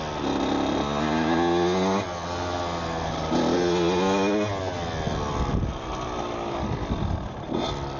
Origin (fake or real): real